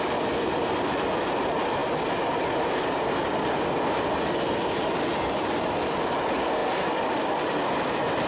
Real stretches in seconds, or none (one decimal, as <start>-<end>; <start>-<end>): 0.0-8.3